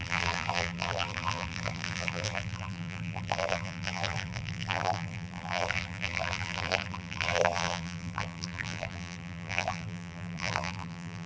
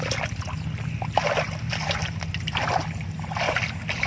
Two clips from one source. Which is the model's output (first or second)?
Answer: first